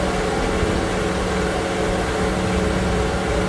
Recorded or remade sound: recorded